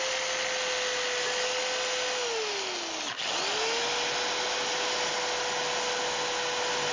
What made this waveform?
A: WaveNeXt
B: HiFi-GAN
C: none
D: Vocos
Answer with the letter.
C